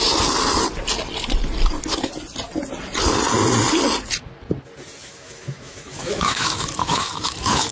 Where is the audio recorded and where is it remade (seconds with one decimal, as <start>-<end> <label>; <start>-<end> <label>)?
0.0-5.0 recorded; 5.0-7.7 remade